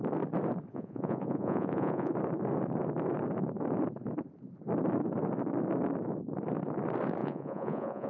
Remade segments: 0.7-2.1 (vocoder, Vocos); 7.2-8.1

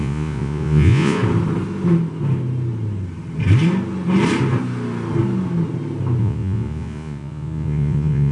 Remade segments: 0.0-1.2 (vocoder, Vocos); 6.2-8.3

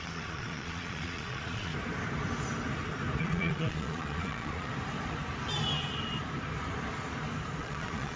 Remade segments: 0.0-1.7 (vocoder, Vocos); 3.2-4.7; 7.6-8.2

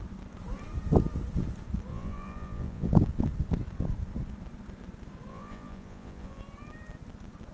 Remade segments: 1.9-2.9 (vocoder, Vocos); 5.3-6.4

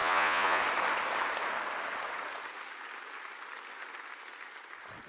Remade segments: 0.0-0.6 (vocoder, Vocos)

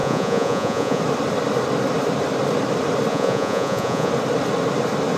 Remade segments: 0.0-1.0 (vocoder, Vocos); 3.1-4.1

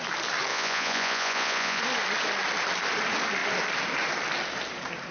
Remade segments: 0.5-1.8 (vocoder, Vocos)